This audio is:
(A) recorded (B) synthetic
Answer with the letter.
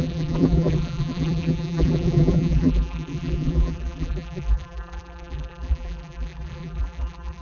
B